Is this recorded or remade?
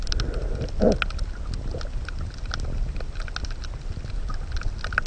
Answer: recorded